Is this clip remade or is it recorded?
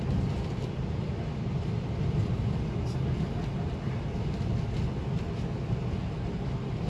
recorded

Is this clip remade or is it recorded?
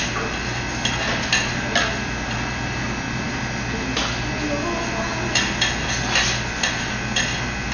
recorded